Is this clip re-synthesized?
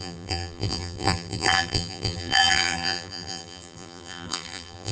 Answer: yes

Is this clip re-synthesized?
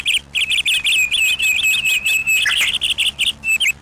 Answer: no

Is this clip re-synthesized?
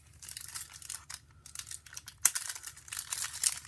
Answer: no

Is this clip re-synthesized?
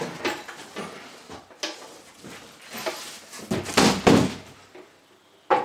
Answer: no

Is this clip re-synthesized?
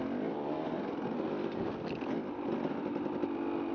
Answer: no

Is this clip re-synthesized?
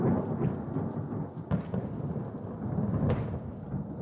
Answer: no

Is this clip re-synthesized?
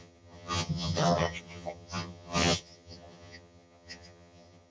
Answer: yes